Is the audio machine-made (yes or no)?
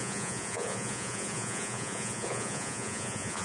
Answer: yes